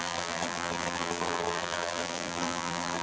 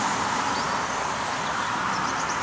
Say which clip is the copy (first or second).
first